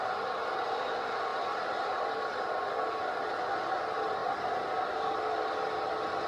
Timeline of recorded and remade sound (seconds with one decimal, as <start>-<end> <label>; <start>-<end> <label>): 0.0-6.3 recorded